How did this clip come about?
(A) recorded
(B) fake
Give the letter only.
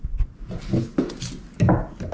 A